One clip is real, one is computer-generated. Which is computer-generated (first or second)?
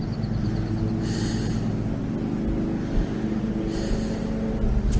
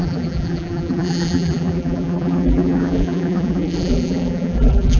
second